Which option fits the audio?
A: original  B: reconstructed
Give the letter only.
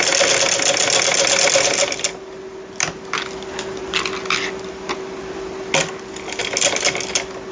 A